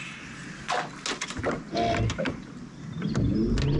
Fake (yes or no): no